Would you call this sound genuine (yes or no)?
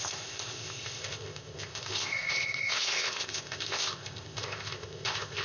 no